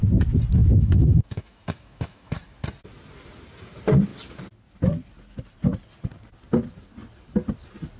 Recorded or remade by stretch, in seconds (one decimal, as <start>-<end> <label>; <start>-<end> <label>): 0.0-0.6 recorded; 0.6-2.3 remade; 2.3-8.0 recorded